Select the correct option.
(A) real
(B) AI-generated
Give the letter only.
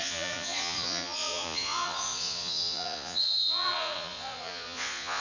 B